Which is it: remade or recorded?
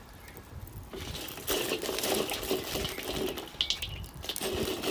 recorded